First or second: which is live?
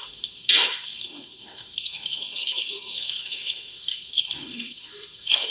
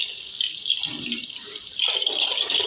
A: second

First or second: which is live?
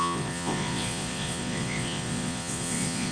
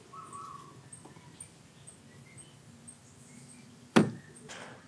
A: second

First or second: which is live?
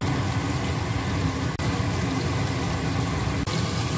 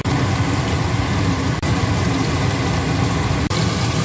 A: first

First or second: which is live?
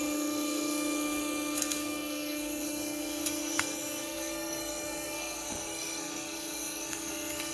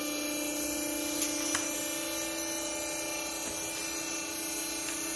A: second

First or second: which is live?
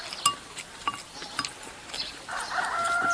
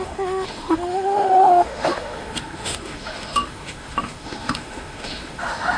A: first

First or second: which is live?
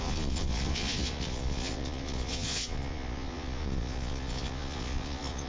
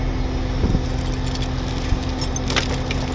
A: second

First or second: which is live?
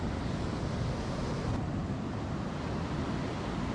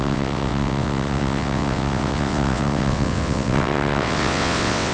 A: first